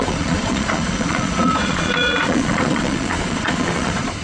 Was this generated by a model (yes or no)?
yes